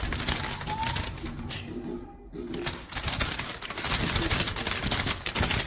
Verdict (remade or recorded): recorded